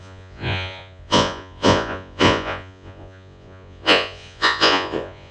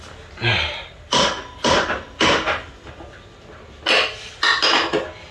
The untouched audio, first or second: second